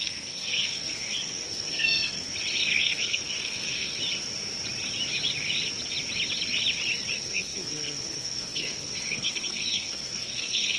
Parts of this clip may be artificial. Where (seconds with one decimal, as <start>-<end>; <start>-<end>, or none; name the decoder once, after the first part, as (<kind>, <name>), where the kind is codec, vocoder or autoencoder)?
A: 0.0-2.3 (codec, SNAC); 2.8-4.0; 7.1-10.8